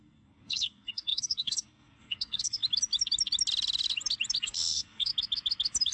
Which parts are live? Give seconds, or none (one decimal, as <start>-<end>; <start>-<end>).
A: 2.6-4.4; 5.1-5.9